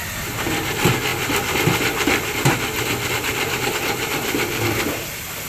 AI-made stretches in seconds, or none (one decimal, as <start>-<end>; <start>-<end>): none